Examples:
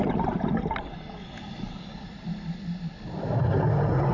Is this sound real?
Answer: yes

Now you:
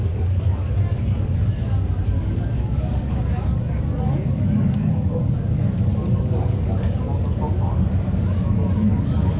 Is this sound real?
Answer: no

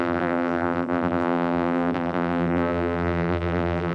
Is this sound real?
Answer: no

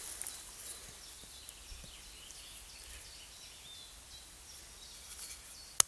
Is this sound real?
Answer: yes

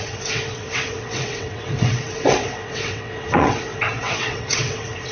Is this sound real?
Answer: no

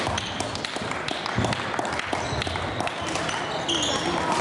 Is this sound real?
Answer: yes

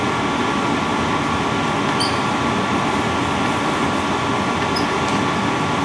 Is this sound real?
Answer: yes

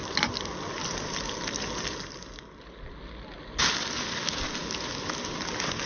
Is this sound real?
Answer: yes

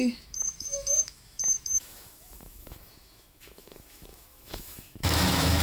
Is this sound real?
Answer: no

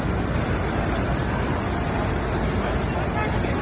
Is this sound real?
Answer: yes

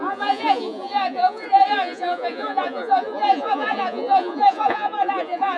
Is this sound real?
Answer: no